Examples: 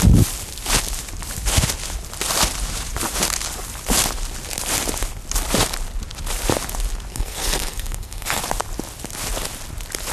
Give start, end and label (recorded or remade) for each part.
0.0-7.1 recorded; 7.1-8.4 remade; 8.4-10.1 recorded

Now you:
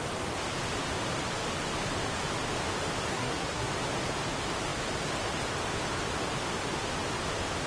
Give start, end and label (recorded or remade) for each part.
0.0-3.1 recorded; 3.1-3.7 remade; 3.7-7.7 recorded

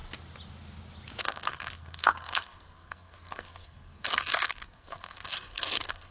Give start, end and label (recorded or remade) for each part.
0.0-1.2 recorded; 1.2-6.1 remade

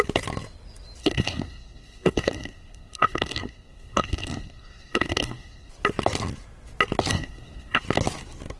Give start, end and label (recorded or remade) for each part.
0.0-1.0 recorded; 1.0-5.7 remade; 5.7-7.1 recorded; 7.1-7.8 remade; 7.8-8.6 recorded

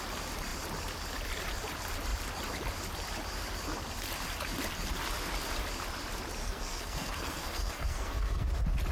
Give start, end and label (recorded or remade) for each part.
0.0-6.4 recorded; 6.4-8.5 remade; 8.5-8.9 recorded

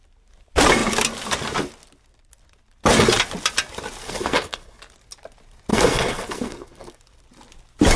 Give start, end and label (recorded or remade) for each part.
0.0-4.0 recorded; 4.0-4.8 remade; 4.8-5.7 recorded; 5.7-7.0 remade; 7.0-8.0 recorded

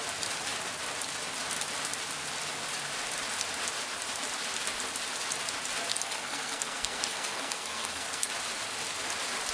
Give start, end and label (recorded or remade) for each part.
0.0-5.9 recorded; 5.9-8.3 remade; 8.3-9.5 recorded

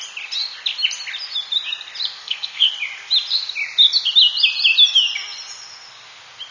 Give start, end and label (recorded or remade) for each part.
0.0-2.2 recorded; 2.2-2.7 remade; 2.7-6.5 recorded